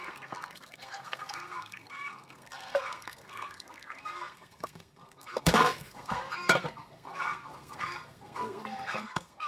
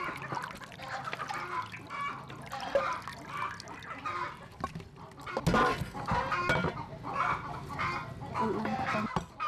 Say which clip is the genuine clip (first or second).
second